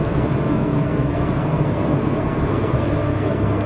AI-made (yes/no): yes